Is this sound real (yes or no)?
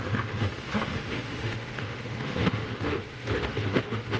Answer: no